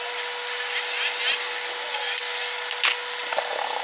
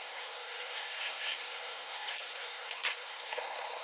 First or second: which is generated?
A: second